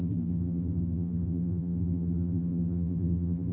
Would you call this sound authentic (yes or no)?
no